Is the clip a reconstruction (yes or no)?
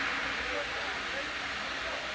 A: no